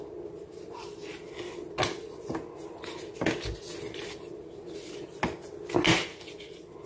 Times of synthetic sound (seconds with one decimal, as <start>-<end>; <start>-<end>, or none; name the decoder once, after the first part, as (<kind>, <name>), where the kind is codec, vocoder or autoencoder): none